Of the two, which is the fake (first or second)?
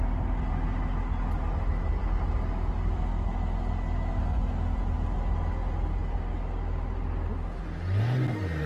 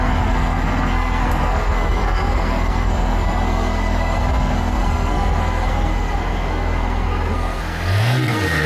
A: second